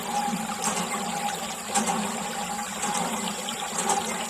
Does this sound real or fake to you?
real